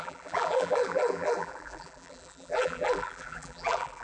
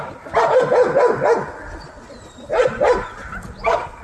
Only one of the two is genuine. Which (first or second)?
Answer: second